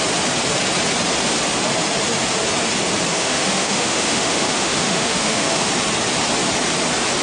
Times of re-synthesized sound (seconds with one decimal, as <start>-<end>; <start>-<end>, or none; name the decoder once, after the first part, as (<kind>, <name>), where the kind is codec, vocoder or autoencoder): 3.1-5.7 (autoencoder, DAC-VAE)